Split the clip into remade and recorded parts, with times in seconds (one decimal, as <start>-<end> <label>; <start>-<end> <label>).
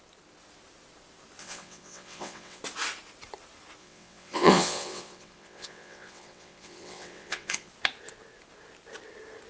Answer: 0.0-1.4 recorded; 1.4-2.6 remade; 2.6-3.8 recorded; 3.8-7.7 remade; 7.7-9.5 recorded